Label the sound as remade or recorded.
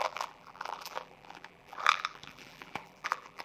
remade